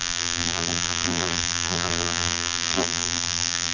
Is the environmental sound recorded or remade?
remade